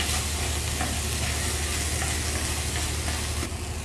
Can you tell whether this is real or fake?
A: real